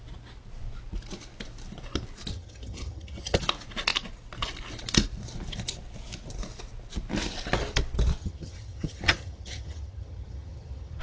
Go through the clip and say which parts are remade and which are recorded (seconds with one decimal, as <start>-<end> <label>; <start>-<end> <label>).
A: 0.0-2.3 recorded; 2.3-3.4 remade; 3.4-8.2 recorded; 8.2-11.0 remade